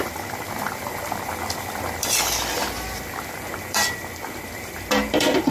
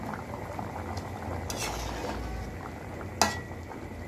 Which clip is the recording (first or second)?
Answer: second